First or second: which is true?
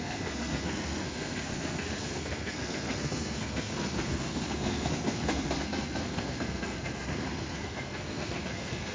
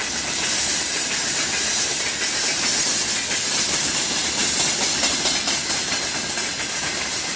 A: second